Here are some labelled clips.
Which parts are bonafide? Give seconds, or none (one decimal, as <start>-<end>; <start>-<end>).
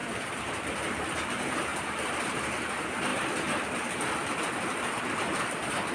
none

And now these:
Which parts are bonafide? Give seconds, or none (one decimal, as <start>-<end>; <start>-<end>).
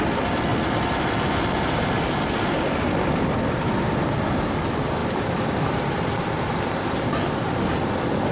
0.0-8.3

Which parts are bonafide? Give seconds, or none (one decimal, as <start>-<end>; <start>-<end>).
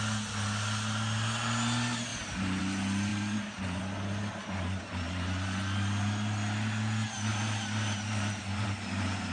0.0-3.1; 3.8-7.3